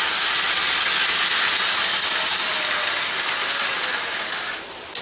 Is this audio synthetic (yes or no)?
no